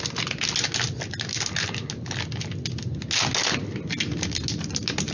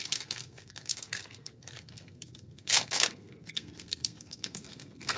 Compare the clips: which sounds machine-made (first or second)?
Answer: second